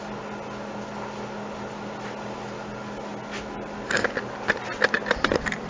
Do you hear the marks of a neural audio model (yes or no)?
no